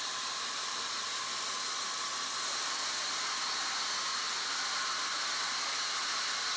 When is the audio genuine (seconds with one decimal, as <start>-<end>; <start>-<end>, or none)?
0.0-6.6